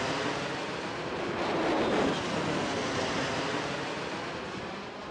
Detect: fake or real real